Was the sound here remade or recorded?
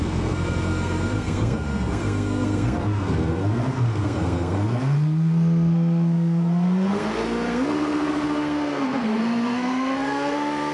remade